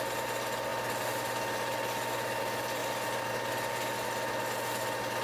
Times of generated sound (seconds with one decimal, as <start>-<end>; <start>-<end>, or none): none